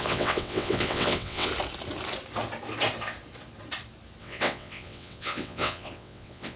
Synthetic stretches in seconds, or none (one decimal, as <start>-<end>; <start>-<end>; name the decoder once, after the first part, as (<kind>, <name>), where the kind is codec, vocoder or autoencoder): 0.0-1.5 (vocoder, WaveNeXt); 4.2-6.6